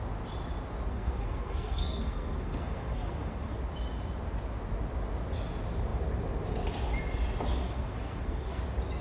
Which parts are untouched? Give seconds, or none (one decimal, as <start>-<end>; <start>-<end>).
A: 0.0-0.9; 3.6-7.6; 8.6-9.0

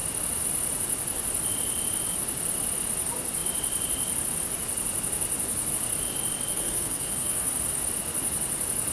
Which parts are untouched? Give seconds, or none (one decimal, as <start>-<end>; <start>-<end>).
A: 0.0-6.5; 7.5-8.9

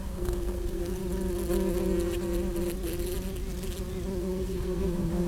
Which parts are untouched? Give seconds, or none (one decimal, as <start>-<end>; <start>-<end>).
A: 1.0-4.2